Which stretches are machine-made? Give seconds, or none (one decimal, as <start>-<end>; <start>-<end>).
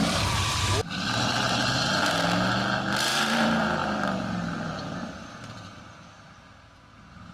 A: 0.0-7.3